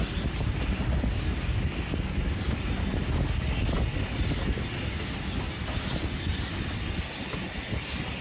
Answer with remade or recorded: recorded